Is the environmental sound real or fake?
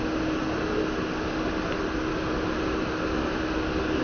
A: real